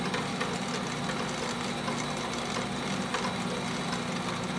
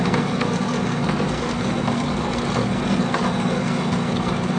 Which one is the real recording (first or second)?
first